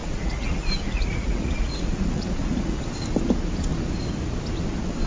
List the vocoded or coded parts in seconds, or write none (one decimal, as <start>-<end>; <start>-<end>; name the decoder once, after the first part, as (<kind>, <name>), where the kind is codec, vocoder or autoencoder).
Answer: 0.0-2.8 (vocoder, Vocos)